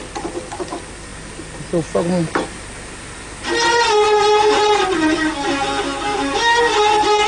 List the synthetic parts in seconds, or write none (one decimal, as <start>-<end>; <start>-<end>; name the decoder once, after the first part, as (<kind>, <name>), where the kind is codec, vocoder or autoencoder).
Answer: none